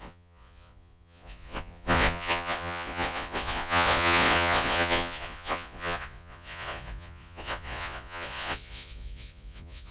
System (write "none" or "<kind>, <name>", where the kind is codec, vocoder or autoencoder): vocoder, Vocos